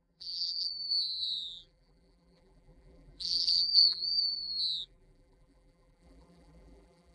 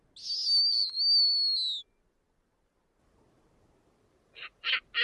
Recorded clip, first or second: second